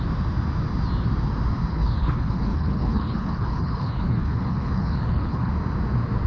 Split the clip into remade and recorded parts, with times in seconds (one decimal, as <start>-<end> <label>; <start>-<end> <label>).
0.0-1.7 recorded; 1.7-5.5 remade; 5.5-6.3 recorded